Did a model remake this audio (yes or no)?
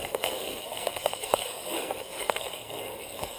yes